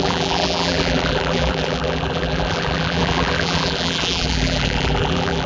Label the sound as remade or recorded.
remade